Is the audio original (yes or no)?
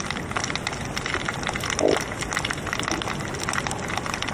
yes